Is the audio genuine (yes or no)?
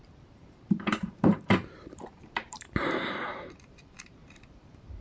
no